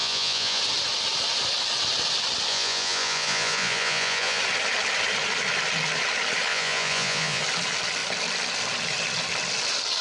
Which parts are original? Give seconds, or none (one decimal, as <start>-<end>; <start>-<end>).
0.6-2.5; 4.4-6.5; 7.4-10.0